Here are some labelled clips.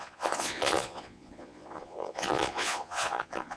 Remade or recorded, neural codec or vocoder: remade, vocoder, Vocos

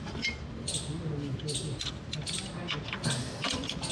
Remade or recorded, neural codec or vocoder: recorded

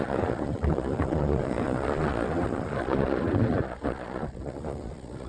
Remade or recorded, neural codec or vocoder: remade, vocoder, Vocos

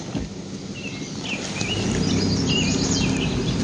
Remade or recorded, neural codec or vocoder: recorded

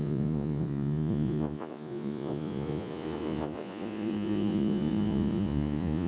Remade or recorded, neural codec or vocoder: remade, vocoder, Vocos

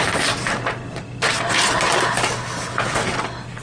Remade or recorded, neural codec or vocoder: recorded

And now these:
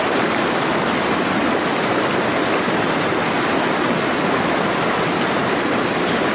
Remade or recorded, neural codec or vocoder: recorded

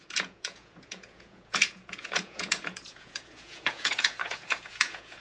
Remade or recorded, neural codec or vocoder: remade, vocoder, Vocos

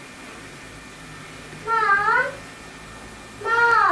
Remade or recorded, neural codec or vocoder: recorded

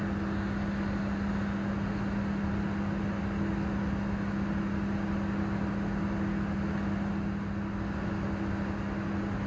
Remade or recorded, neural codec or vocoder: recorded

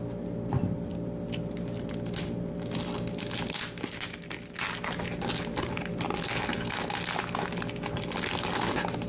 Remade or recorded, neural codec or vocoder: recorded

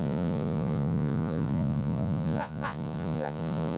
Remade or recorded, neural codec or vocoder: remade, vocoder, Vocos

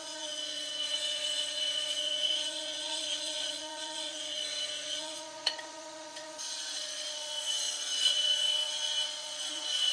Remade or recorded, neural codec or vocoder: remade, vocoder, Vocos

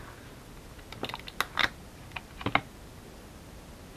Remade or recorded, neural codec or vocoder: recorded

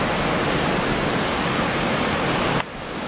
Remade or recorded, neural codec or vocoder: recorded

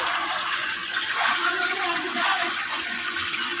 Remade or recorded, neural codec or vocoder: remade, vocoder, Vocos